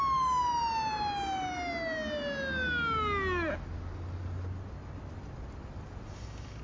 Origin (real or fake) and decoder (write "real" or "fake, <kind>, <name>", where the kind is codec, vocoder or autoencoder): real